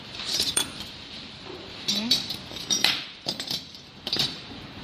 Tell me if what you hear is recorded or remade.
remade